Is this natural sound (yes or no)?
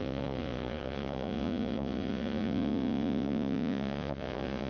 no